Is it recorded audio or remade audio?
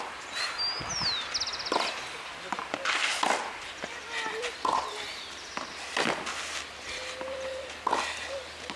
recorded